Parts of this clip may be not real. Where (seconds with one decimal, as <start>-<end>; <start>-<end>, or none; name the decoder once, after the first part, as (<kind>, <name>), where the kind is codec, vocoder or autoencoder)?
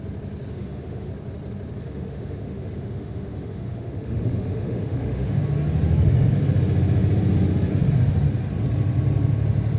0.5-1.1 (autoencoder, DAC-VAE); 1.8-5.4